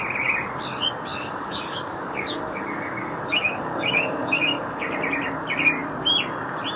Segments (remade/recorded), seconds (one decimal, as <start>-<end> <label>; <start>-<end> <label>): 0.0-1.1 recorded; 1.1-4.9 remade; 4.9-6.8 recorded